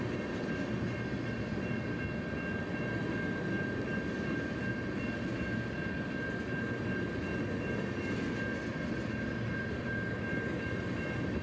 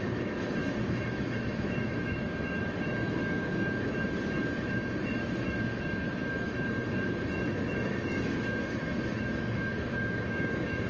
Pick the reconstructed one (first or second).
second